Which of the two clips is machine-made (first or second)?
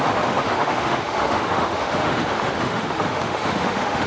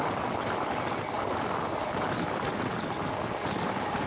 first